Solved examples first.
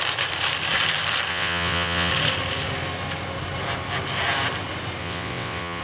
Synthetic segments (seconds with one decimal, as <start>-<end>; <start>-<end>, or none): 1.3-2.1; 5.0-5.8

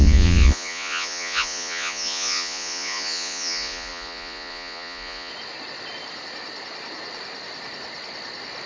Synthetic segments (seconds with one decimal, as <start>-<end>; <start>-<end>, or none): 0.0-5.3

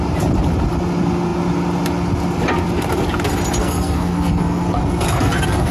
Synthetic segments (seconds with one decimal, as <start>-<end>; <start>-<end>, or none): 3.6-5.7

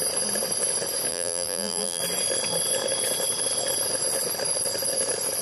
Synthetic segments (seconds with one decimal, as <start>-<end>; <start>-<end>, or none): 1.1-2.0

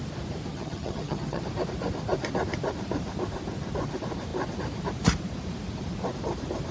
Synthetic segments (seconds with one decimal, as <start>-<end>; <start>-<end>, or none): 0.5-1.4